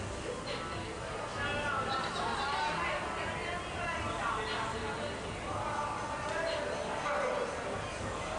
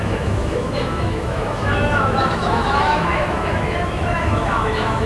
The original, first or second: first